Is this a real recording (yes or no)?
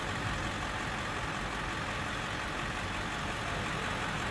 yes